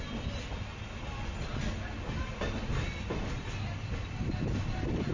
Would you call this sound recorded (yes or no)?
yes